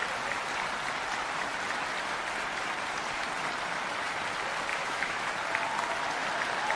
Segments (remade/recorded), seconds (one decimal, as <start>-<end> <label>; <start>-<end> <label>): 0.0-4.7 recorded; 4.7-5.3 remade; 5.3-6.8 recorded